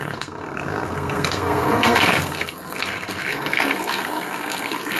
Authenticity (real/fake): fake